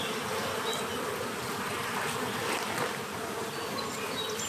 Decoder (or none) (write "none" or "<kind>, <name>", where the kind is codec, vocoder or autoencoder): none